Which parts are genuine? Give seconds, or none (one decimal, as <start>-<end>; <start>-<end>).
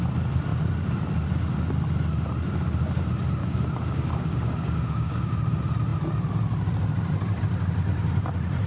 0.0-3.4; 5.3-8.7